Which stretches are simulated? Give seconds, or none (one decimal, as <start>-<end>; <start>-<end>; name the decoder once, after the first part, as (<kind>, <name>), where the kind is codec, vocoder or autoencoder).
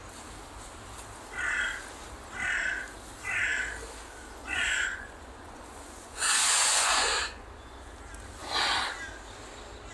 4.4-7.9 (vocoder, Vocos)